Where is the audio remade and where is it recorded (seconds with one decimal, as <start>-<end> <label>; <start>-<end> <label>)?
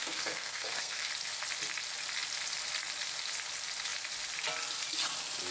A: 0.0-1.1 remade; 1.1-5.5 recorded